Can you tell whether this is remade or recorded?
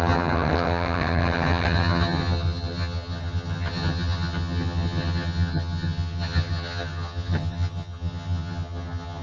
remade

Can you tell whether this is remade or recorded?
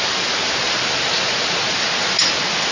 recorded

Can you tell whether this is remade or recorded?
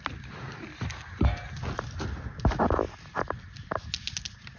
recorded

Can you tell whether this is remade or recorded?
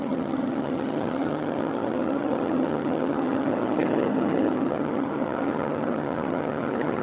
remade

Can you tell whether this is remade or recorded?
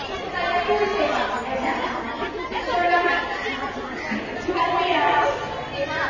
recorded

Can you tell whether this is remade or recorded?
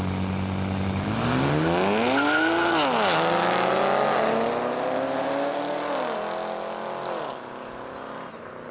recorded